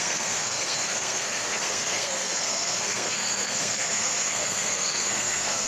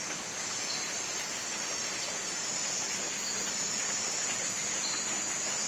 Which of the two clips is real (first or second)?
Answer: second